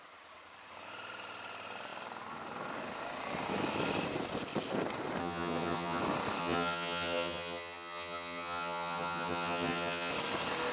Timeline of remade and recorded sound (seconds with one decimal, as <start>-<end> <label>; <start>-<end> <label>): 0.0-5.2 recorded; 5.2-6.0 remade; 6.0-6.4 recorded; 6.4-10.1 remade; 10.1-10.7 recorded

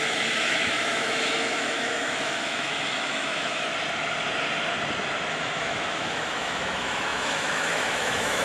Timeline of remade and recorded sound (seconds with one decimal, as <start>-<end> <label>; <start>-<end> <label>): 0.0-3.7 remade; 3.7-5.3 recorded; 5.3-8.4 remade

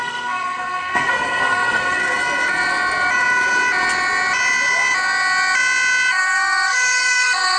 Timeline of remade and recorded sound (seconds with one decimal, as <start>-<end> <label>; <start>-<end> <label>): 0.0-2.0 remade; 2.0-6.1 recorded; 6.1-7.6 remade